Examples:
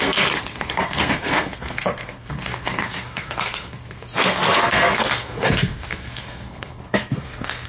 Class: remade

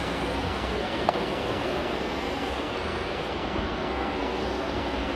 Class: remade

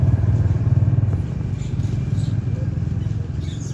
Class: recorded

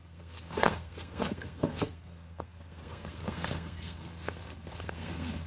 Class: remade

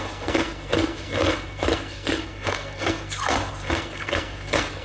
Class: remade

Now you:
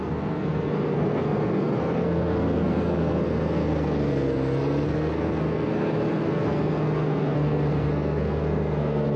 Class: remade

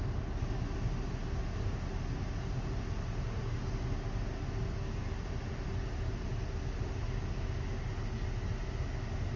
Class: recorded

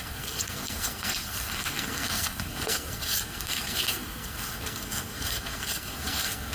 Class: remade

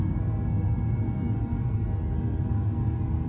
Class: remade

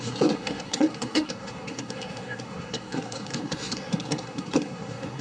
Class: remade